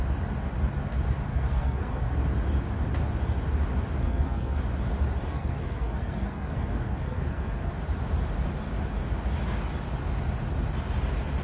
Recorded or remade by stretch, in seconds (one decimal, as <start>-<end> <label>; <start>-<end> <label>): 0.0-1.3 recorded; 1.3-2.0 remade; 2.0-4.0 recorded; 4.0-4.6 remade; 4.6-5.3 recorded; 5.3-7.7 remade; 7.7-11.4 recorded